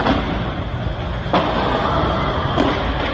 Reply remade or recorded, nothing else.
recorded